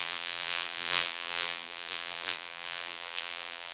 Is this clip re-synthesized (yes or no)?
yes